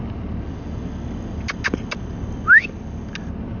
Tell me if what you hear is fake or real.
real